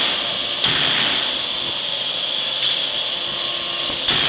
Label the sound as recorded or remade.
recorded